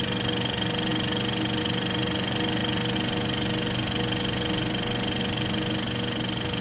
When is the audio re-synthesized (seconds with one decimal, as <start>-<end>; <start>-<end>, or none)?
none